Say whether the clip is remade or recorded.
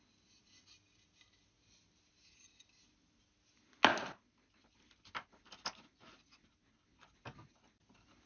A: recorded